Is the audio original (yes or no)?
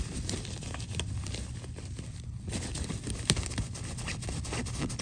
yes